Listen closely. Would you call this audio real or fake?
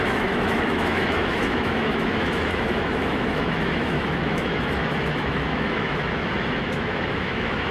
fake